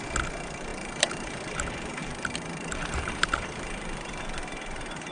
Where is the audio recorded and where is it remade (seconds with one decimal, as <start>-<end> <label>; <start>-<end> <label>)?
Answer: 0.0-0.7 recorded; 0.7-1.6 remade; 1.6-2.0 recorded; 2.0-4.2 remade; 4.2-5.1 recorded